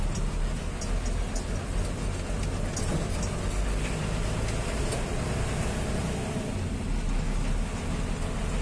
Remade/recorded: recorded